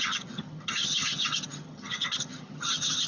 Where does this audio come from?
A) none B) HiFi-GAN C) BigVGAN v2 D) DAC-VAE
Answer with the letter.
B